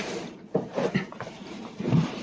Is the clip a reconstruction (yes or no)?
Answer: yes